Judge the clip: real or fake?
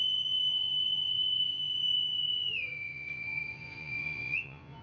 fake